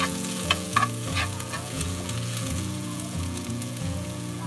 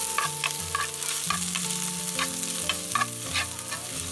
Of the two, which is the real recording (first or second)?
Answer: second